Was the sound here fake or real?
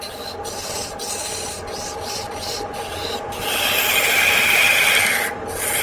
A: real